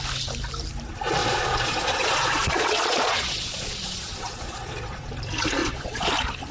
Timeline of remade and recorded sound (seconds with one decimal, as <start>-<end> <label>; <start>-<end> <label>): 0.0-1.2 recorded; 1.2-5.1 remade; 5.1-5.6 recorded; 5.6-6.1 remade; 6.1-6.5 recorded